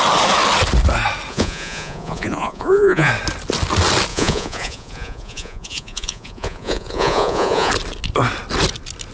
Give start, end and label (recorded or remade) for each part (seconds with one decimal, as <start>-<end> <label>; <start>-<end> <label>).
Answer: 0.0-1.3 recorded; 1.3-3.1 remade; 3.1-4.1 recorded; 4.1-7.7 remade; 7.7-9.1 recorded